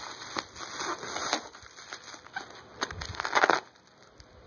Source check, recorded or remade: recorded